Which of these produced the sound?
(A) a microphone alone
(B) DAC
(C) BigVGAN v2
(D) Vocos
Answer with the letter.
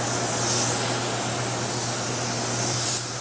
A